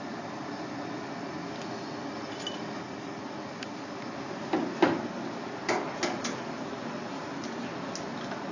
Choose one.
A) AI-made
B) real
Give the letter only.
B